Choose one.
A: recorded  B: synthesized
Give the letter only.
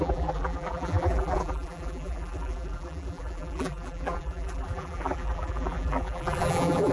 B